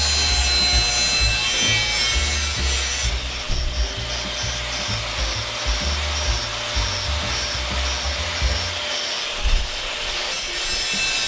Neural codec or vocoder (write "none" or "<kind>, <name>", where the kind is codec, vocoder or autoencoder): none